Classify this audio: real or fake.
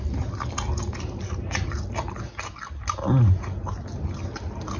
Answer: real